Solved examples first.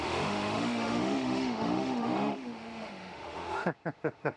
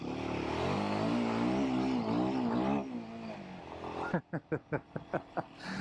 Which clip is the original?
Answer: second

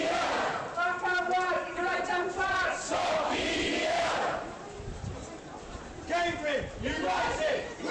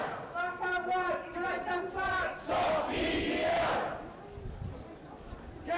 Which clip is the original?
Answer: second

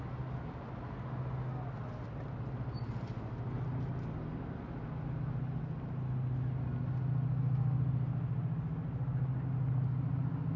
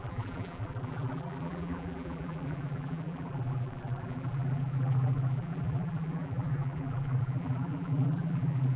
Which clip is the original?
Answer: first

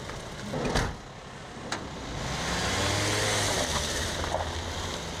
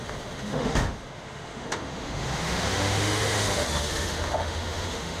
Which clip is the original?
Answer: first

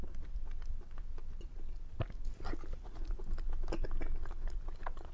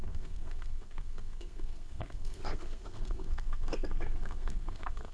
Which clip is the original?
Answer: first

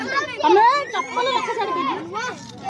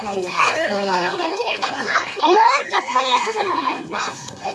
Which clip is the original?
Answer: first